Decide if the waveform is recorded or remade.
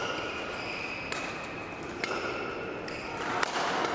recorded